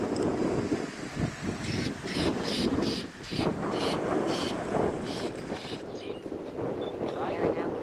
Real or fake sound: real